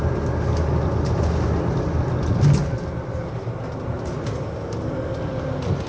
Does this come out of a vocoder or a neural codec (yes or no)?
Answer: no